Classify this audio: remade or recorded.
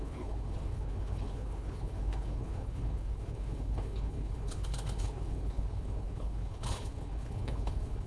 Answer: remade